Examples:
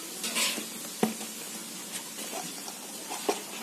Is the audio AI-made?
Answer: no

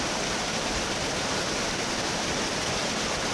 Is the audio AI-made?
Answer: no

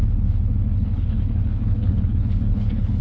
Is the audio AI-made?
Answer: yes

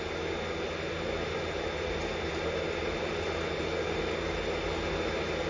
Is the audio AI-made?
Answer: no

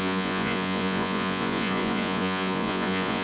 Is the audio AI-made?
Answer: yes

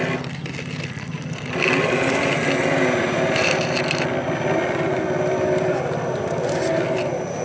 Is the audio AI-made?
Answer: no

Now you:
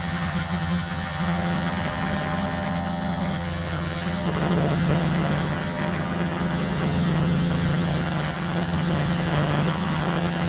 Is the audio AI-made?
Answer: yes